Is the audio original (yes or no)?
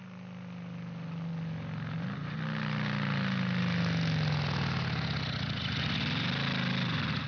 yes